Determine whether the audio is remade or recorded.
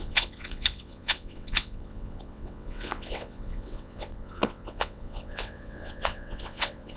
remade